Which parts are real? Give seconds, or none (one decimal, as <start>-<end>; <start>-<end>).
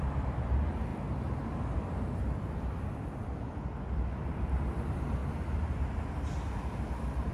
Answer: 0.9-2.4; 5.2-7.3